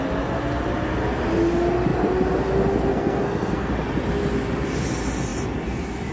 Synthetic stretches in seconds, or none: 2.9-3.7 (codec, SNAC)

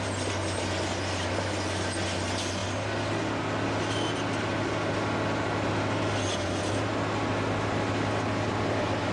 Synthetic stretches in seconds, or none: none

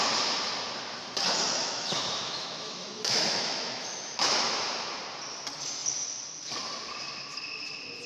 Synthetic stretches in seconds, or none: 1.6-4.3 (autoencoder, DAC-VAE)

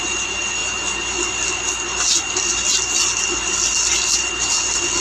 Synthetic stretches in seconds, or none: none